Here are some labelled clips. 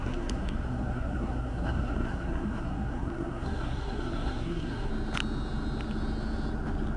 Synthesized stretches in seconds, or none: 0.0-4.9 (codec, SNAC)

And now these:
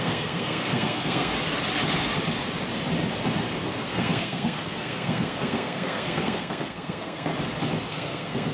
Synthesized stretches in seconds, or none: 0.0-1.3 (codec, SNAC); 3.6-7.3; 7.9-8.5

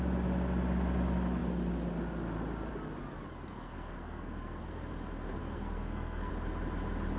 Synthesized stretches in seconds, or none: 3.4-4.9 (codec, SNAC); 5.4-6.3